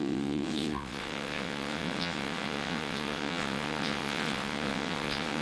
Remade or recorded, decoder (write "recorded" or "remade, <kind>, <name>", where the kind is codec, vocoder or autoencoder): remade, vocoder, WaveNeXt